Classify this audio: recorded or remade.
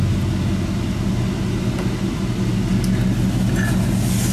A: recorded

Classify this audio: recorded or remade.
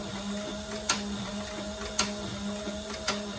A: recorded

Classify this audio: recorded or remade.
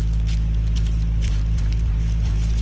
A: recorded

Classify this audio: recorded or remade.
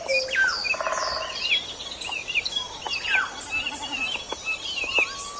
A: recorded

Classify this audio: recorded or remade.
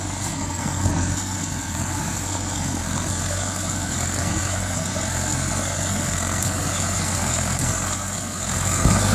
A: remade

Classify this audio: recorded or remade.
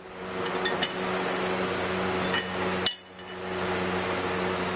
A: recorded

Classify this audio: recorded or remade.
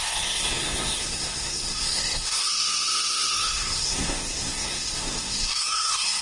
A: remade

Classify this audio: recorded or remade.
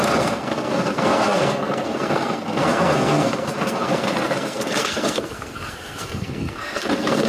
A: remade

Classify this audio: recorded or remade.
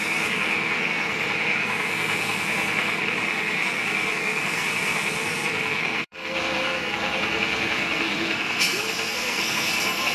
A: remade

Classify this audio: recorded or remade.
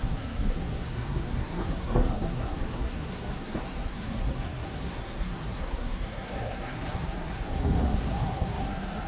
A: remade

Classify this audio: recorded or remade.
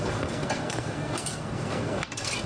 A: remade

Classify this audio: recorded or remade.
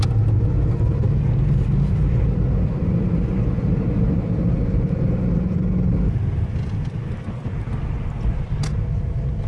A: recorded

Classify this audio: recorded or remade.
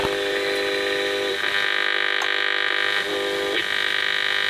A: recorded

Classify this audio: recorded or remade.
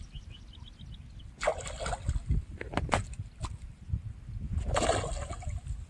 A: recorded